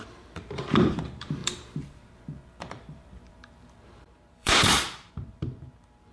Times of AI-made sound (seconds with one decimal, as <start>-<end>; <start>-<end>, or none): 0.0-6.1